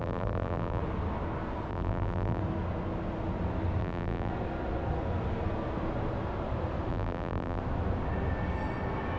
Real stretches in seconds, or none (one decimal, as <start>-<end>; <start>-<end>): 0.8-1.7; 2.4-3.8; 4.3-6.9; 7.6-9.2